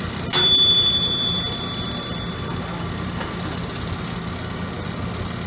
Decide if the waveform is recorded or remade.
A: recorded